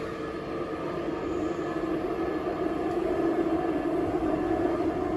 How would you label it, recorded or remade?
recorded